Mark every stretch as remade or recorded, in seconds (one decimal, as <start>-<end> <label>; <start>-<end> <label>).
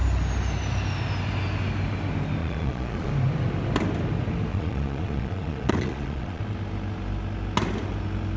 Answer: 0.0-2.4 recorded; 2.4-3.1 remade; 3.1-4.5 recorded; 4.5-6.4 remade; 6.4-8.4 recorded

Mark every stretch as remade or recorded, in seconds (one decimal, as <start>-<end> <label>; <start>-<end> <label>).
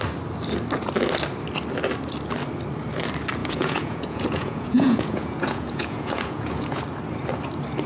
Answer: 0.0-3.4 recorded; 3.4-6.8 remade; 6.8-7.9 recorded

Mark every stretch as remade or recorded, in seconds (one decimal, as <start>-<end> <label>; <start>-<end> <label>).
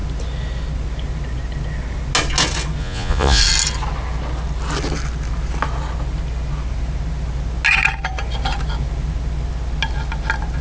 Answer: 0.0-2.8 recorded; 2.8-3.4 remade; 3.4-10.6 recorded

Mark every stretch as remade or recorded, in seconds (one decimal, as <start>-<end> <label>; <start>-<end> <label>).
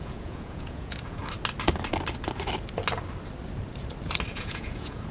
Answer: 0.0-1.2 remade; 1.2-4.3 recorded; 4.3-5.1 remade